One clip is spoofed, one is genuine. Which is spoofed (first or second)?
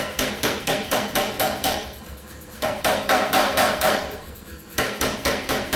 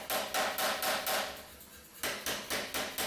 first